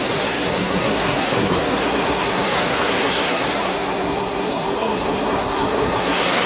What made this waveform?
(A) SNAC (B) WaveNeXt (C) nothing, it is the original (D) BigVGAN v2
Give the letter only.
A